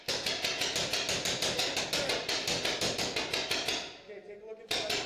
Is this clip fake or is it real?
real